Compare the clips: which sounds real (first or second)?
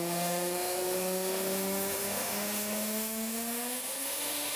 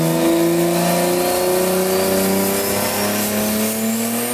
second